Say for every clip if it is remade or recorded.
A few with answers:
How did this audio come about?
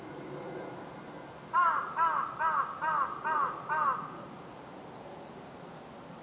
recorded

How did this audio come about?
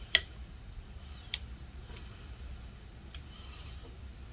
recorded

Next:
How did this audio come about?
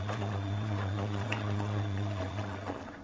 remade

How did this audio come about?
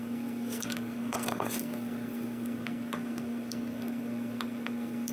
remade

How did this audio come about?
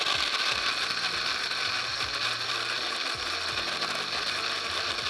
recorded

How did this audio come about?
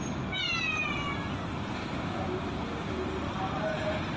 recorded